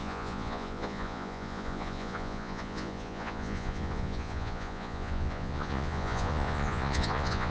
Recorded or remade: remade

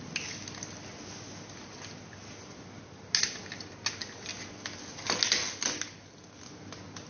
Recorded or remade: recorded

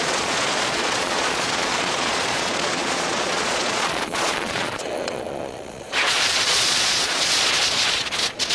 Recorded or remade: remade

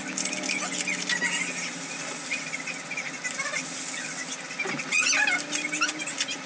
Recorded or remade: recorded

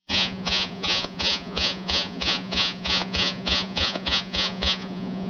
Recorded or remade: remade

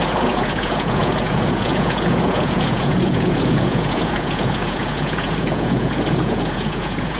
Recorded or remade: remade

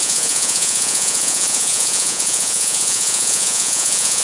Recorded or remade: remade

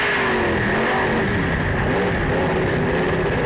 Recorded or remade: recorded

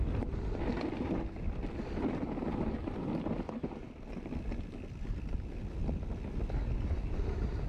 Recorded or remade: recorded